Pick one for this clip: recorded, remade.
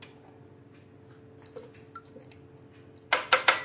recorded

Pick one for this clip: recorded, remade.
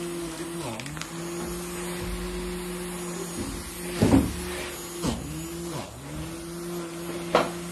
recorded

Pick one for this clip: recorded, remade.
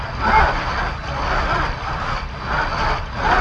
recorded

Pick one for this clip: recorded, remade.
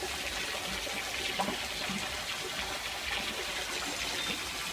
recorded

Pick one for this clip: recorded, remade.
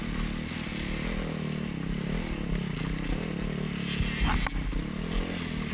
recorded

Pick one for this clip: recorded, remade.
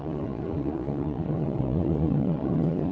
remade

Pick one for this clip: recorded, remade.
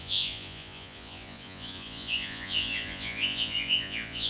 remade